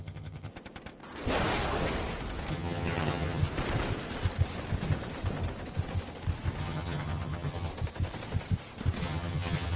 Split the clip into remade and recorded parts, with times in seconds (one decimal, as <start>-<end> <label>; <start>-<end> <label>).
0.0-0.5 remade; 0.5-2.5 recorded; 2.5-3.4 remade; 3.4-6.6 recorded; 6.6-7.7 remade; 7.7-9.0 recorded; 9.0-9.8 remade